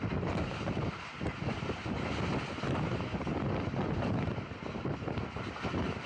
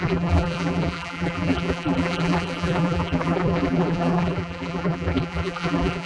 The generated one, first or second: second